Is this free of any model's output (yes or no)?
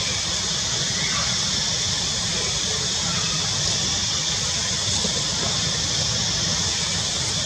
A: yes